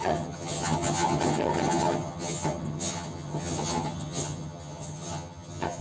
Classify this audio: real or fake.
fake